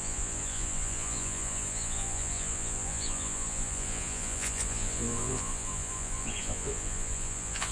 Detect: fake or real fake